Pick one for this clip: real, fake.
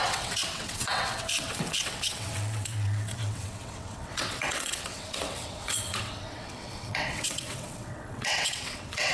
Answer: fake